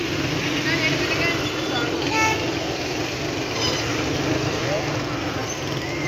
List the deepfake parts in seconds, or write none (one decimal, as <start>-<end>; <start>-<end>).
none